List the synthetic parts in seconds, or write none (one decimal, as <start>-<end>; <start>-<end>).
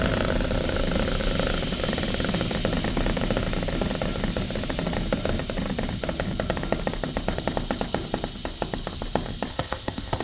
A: 9.5-10.2